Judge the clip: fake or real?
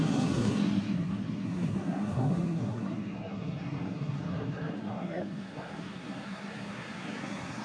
fake